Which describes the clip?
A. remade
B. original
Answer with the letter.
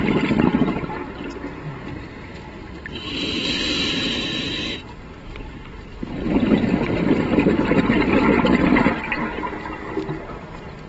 B